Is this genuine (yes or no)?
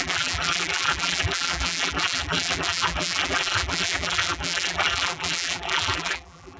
no